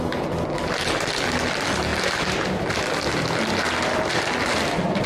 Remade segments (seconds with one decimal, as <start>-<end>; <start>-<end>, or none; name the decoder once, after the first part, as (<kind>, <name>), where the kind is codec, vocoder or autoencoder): none